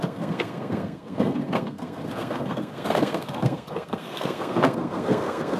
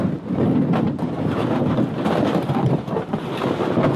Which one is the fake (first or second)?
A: first